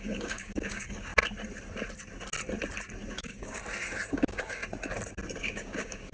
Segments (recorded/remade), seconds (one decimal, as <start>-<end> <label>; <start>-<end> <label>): 0.0-1.1 remade; 1.1-3.1 recorded; 3.1-3.6 remade; 3.6-4.1 recorded; 4.1-4.6 remade; 4.6-5.4 recorded; 5.4-6.1 remade